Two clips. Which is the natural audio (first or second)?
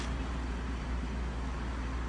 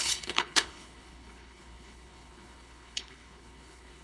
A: first